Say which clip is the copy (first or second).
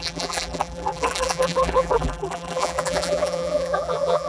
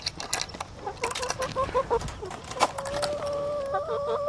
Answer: first